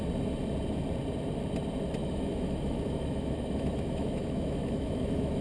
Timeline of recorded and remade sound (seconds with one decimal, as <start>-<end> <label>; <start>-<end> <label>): 0.0-2.0 recorded; 2.0-5.4 remade